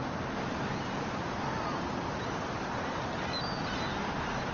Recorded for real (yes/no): yes